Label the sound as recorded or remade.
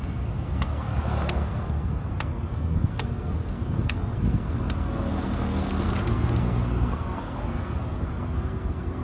remade